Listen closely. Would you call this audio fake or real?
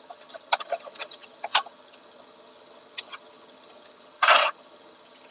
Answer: fake